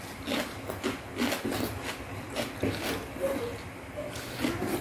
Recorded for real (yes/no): yes